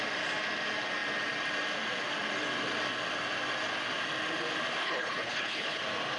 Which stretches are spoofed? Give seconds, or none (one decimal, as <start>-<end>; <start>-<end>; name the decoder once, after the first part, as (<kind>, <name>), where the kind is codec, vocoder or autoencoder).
4.8-5.8 (codec, HILCodec)